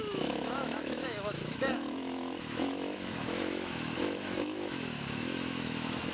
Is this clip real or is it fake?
fake